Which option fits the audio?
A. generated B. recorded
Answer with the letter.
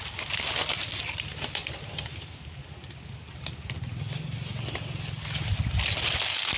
B